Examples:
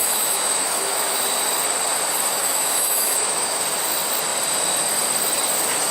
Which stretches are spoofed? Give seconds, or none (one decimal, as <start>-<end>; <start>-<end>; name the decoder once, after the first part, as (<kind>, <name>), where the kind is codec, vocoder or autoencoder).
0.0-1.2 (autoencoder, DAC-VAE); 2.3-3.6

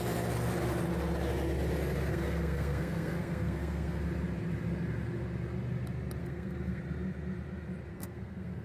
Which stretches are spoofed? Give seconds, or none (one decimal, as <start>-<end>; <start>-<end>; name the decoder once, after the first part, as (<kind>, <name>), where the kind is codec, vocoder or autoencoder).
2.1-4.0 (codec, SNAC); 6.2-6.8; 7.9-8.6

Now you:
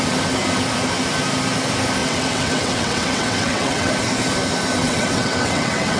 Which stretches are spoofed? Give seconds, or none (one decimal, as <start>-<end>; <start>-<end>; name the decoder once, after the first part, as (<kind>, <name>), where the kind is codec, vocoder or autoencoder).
2.0-3.9 (vocoder, WaveNeXt); 4.8-6.0

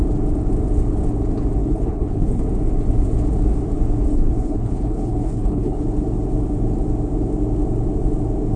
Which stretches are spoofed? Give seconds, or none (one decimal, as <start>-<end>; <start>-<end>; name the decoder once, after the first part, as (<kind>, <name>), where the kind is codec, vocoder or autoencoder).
1.6-2.4 (codec, HILCodec); 4.1-5.8

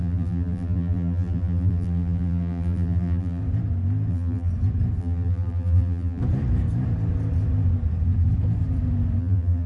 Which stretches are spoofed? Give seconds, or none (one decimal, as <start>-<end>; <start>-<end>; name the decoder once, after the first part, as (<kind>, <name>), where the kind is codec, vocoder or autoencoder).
0.0-3.4 (vocoder, BigVGAN v2); 4.1-4.5; 5.0-6.2; 9.2-9.7